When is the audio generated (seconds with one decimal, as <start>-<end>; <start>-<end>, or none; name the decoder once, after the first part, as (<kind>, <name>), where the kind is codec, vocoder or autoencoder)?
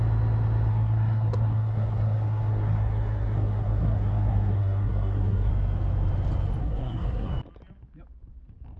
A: 0.7-5.5 (codec, SNAC); 6.6-7.3